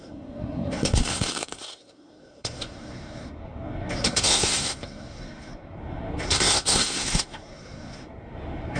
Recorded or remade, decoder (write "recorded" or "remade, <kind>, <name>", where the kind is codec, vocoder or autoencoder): remade, codec, SNAC